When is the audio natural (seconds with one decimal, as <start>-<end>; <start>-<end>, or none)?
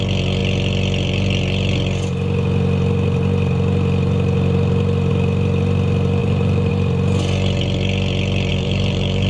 0.0-6.2; 6.7-8.5